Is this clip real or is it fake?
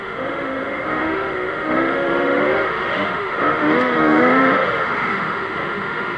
fake